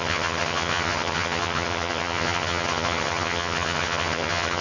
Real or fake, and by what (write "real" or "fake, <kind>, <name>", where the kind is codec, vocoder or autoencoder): fake, vocoder, HiFi-GAN